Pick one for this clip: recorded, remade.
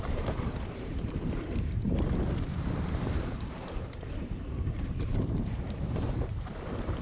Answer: remade